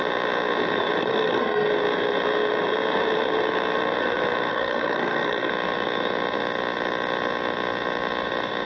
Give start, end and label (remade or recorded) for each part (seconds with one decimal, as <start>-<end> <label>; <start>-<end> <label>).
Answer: 0.0-1.0 recorded; 1.0-1.7 remade; 1.7-4.5 recorded; 4.5-5.5 remade; 5.5-8.6 recorded